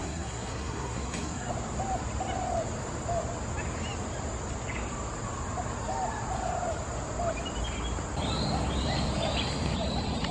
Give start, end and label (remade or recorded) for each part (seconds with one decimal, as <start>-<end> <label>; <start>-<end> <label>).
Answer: 0.0-1.5 remade; 1.5-10.3 recorded